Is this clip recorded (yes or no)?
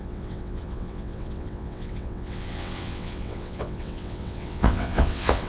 no